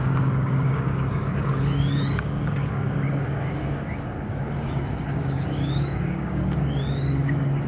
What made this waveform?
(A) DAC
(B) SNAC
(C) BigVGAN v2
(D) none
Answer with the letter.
A